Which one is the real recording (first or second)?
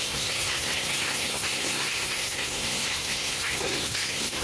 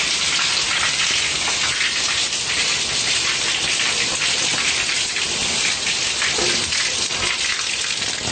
second